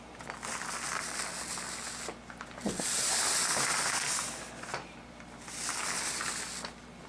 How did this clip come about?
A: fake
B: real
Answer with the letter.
B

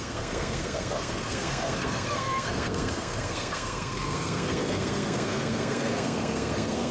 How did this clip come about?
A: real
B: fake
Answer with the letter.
B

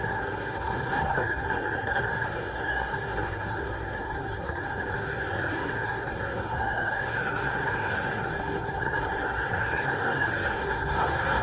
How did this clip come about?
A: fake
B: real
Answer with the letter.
A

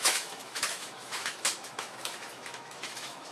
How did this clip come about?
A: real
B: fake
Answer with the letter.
B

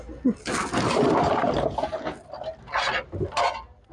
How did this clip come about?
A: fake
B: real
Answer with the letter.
B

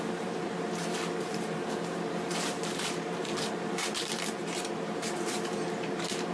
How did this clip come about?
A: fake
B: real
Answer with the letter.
A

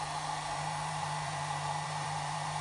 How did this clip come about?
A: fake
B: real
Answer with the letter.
A